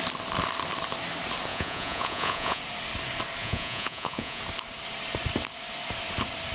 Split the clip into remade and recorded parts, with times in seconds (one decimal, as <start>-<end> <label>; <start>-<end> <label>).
0.0-1.5 recorded; 1.5-2.6 remade; 2.6-3.4 recorded; 3.4-4.4 remade; 4.4-6.5 recorded